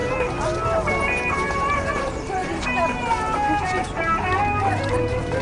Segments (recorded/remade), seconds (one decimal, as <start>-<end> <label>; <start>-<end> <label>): 0.0-1.3 recorded; 1.3-5.4 remade